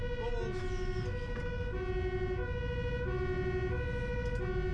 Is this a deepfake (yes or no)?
no